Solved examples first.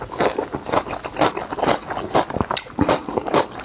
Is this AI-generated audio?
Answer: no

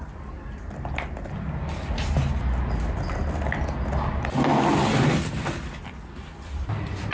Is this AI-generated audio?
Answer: no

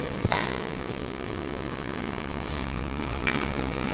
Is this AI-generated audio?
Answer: yes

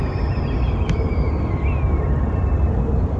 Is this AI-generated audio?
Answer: no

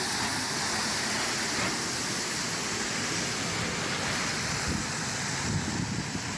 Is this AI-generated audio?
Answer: no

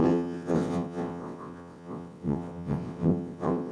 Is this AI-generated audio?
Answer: yes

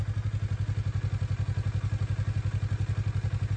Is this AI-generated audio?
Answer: no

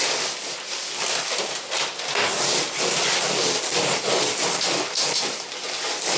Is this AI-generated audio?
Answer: no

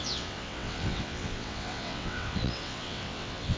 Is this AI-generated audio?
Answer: yes